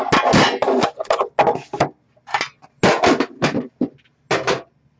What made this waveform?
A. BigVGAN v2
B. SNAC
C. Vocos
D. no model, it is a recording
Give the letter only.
D